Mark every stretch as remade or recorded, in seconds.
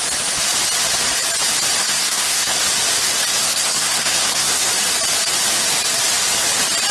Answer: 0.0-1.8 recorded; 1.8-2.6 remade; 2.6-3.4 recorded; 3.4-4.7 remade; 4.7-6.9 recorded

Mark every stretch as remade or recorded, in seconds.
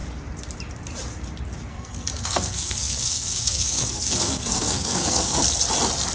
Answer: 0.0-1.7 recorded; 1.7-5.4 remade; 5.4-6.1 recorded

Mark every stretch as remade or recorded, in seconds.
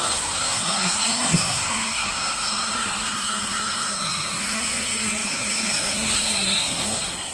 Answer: 0.0-7.3 remade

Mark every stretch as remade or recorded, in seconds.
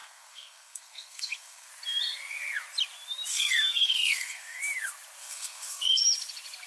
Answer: 0.0-1.7 remade; 1.7-3.3 recorded; 3.3-4.6 remade; 4.6-5.2 recorded; 5.2-6.0 remade; 6.0-6.7 recorded